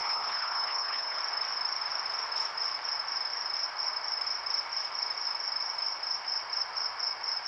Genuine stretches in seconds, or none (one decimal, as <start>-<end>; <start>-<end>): 1.2-7.5

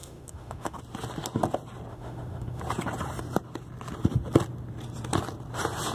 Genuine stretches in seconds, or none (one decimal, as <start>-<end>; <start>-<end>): 0.8-1.9; 2.6-5.9

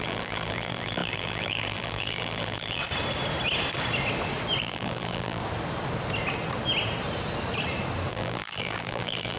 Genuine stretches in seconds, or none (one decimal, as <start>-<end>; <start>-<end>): 2.8-4.6; 5.4-8.1

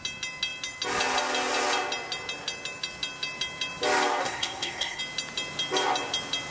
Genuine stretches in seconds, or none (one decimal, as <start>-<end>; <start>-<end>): 0.0-4.2; 5.0-6.5

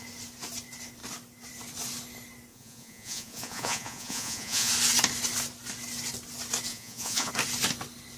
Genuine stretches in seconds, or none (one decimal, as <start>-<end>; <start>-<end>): 0.0-2.5; 4.7-6.7; 7.3-8.2